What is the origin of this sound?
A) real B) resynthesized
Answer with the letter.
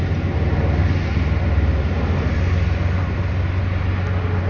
A